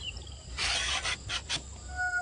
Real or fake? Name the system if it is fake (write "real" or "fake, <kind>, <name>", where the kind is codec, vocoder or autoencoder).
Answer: real